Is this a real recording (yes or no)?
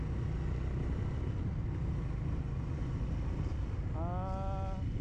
yes